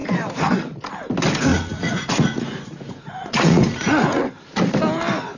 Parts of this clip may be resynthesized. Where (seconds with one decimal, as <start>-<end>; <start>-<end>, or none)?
1.5-4.2